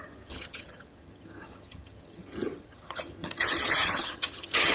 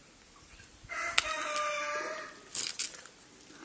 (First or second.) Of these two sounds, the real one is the second